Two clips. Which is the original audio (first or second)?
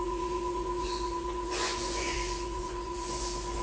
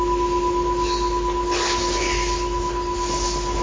second